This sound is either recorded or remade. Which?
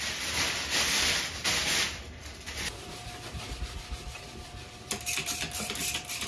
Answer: remade